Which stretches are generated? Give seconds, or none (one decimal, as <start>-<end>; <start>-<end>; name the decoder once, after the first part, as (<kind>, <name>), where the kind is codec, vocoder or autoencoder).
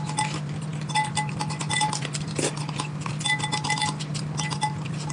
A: none